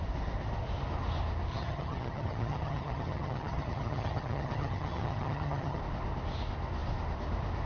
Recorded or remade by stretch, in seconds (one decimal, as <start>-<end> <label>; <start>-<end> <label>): 0.0-1.5 recorded; 1.5-5.8 remade; 5.8-7.7 recorded